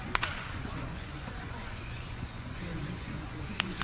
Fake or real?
fake